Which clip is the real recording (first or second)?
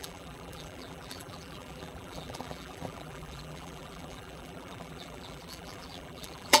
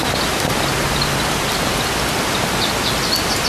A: second